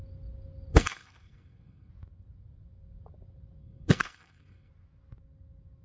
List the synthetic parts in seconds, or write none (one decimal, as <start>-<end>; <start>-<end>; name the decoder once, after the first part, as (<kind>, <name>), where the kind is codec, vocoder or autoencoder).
0.7-1.9 (codec, SNAC); 3.6-4.7